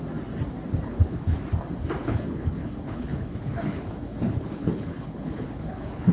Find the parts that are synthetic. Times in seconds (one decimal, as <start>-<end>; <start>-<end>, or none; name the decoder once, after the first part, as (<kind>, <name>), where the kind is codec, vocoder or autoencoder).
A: 0.7-1.4 (codec, HILCodec); 2.0-6.1